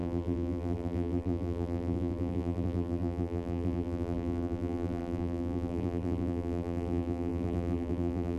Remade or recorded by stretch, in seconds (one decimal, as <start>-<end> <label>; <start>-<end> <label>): 0.0-8.4 remade

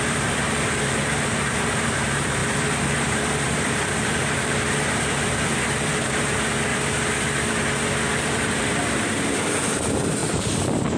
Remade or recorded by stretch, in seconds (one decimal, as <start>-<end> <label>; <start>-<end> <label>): 0.0-6.7 remade; 6.7-8.1 recorded; 8.1-11.0 remade

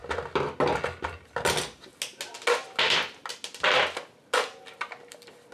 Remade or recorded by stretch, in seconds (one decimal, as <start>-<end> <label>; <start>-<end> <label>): 0.0-5.5 recorded

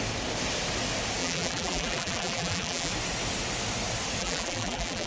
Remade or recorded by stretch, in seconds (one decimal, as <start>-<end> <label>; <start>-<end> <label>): 0.0-1.2 recorded; 1.2-2.9 remade; 2.9-4.2 recorded; 4.2-5.1 remade

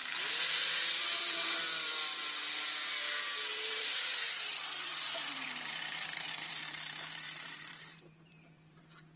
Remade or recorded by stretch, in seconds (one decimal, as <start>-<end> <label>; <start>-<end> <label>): 0.0-0.9 recorded; 0.9-1.9 remade; 1.9-3.0 recorded; 3.0-9.2 remade

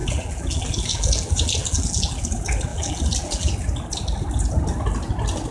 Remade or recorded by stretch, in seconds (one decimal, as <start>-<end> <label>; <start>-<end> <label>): 0.0-2.2 remade; 2.2-2.7 recorded; 2.7-3.5 remade; 3.5-5.5 recorded

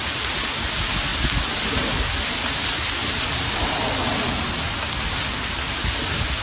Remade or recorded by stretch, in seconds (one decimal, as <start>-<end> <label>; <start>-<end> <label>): 0.0-3.0 recorded; 3.0-3.8 remade; 3.8-6.4 recorded

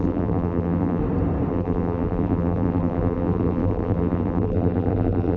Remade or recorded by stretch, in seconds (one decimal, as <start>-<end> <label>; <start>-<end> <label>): 0.0-1.0 remade; 1.0-1.5 recorded; 1.5-5.4 remade